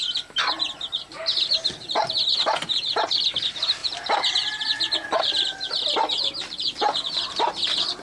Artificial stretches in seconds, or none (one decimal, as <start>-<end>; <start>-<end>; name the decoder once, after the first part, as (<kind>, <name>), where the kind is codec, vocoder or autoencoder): 0.0-1.2 (vocoder, BigVGAN v2); 2.6-8.0